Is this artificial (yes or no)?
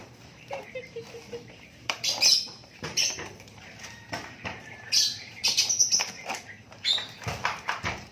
yes